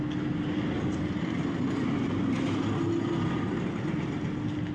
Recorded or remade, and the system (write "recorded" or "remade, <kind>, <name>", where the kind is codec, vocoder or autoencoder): recorded